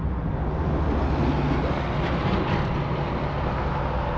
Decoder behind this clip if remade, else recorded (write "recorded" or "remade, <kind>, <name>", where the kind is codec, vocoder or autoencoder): recorded